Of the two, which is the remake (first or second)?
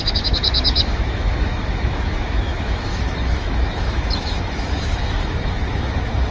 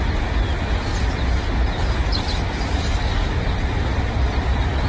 first